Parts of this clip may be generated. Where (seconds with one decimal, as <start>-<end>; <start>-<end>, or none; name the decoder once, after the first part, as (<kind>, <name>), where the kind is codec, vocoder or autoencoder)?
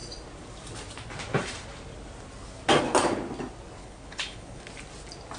3.8-4.6 (codec, HILCodec)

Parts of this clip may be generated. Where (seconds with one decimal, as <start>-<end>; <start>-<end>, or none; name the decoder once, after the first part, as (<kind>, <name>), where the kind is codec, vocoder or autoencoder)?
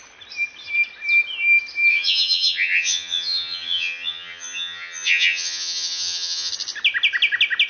1.9-6.5 (vocoder, HiFi-GAN)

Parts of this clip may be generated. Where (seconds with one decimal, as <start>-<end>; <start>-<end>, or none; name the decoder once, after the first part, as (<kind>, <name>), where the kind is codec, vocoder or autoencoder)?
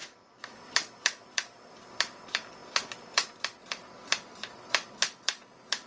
0.0-2.2 (vocoder, BigVGAN v2); 2.6-5.9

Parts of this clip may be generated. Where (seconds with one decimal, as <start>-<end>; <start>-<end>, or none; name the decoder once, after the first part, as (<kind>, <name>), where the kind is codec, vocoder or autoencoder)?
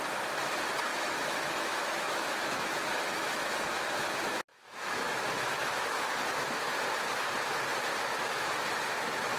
0.9-4.1 (autoencoder, DAC-VAE); 4.5-6.7; 7.9-8.5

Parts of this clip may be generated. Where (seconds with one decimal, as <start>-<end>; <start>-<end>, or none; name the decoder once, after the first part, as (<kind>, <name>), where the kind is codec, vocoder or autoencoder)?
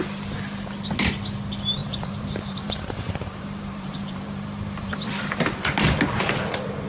1.8-5.1 (vocoder, BigVGAN v2)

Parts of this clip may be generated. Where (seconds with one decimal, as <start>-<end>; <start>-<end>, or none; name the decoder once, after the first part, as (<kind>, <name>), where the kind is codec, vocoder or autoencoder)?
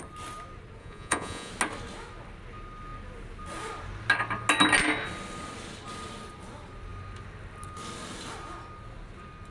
0.8-1.5 (vocoder, Vocos)